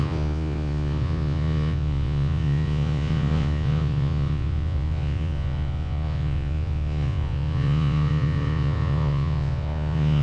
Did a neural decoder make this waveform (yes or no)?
yes